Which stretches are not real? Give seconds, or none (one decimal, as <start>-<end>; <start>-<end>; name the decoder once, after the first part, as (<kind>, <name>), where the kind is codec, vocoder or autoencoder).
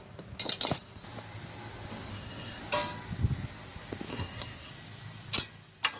2.1-2.6 (codec, SNAC); 4.1-4.7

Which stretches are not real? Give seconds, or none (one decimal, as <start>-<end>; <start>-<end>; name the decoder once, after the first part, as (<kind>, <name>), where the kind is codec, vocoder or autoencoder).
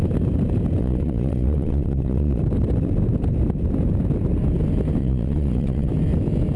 0.8-2.4 (vocoder, Vocos); 5.0-5.9